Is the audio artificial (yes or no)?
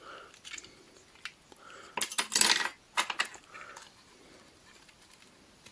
no